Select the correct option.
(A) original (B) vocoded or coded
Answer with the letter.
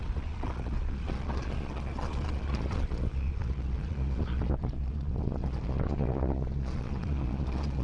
B